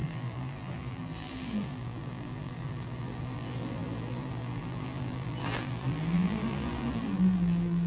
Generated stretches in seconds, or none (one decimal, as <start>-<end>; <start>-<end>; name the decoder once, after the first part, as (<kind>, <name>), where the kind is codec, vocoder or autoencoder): 0.0-7.9 (vocoder, BigVGAN v2)